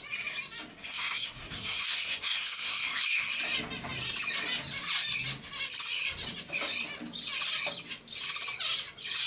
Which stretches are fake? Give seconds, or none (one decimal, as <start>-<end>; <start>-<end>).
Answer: 0.7-3.3